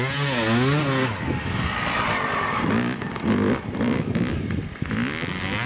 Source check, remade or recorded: recorded